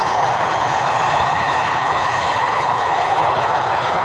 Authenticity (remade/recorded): remade